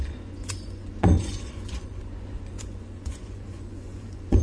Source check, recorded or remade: remade